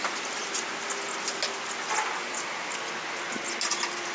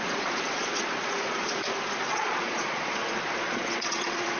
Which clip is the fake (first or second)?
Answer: second